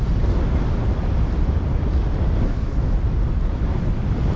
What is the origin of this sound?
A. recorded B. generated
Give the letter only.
A